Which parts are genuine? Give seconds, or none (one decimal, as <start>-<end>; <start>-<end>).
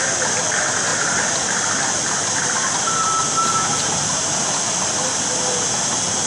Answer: 0.0-0.9; 4.1-6.3